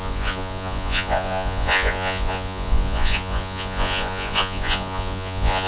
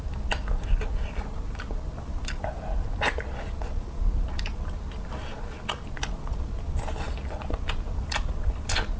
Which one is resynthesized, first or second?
first